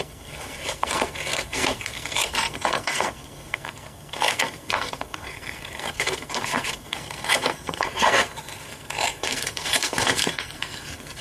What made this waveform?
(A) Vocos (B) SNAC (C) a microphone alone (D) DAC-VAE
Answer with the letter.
B